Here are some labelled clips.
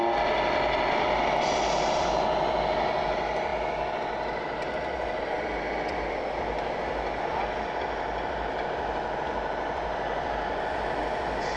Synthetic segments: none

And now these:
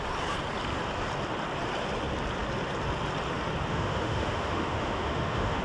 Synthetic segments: 3.7-5.6 (autoencoder, DAC-VAE)

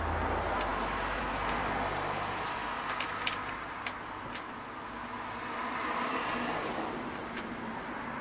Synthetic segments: none

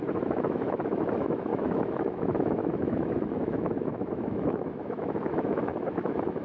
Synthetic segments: 0.0-6.4 (autoencoder, DAC-VAE)

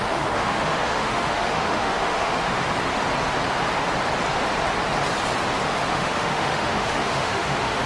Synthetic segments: 0.0-2.7 (autoencoder, DAC-VAE); 5.9-7.9

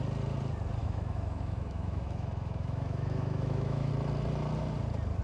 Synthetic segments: 0.8-3.9 (autoencoder, DAC-VAE)

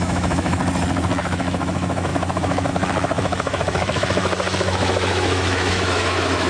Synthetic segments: 0.0-0.6 (autoencoder, DAC-VAE); 1.2-6.5